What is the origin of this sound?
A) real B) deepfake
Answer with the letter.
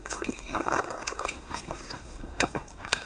B